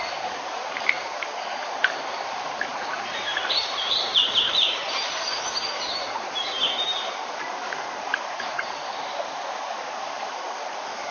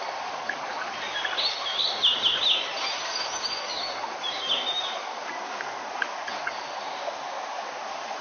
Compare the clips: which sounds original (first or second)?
second